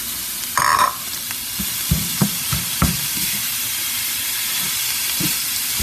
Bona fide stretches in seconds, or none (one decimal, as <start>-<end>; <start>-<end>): 0.0-3.8; 4.7-5.8